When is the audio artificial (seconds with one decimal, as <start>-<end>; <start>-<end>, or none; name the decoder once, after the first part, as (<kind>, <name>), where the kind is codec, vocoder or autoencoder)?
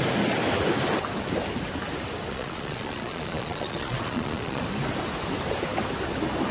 2.3-4.6 (vocoder, Vocos)